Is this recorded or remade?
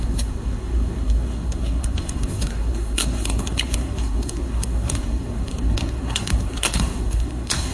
remade